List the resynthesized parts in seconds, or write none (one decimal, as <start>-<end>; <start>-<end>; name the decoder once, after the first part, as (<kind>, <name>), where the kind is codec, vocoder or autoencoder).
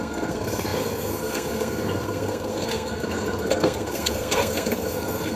0.0-5.4 (codec, SNAC)